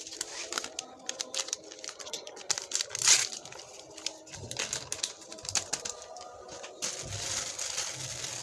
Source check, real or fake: real